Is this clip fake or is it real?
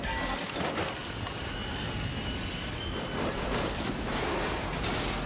real